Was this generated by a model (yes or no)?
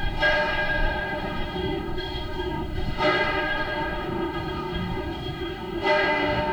yes